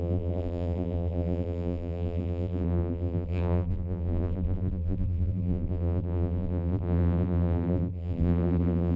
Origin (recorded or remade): remade